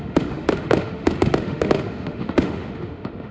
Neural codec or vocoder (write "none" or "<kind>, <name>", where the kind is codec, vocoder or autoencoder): autoencoder, DAC-VAE